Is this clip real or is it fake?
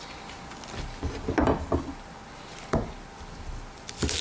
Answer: real